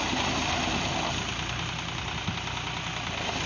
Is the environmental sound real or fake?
real